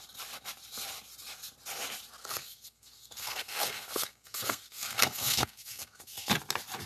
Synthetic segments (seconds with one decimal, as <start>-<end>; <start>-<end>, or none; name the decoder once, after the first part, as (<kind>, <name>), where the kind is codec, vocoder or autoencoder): 2.2-6.3 (codec, SNAC)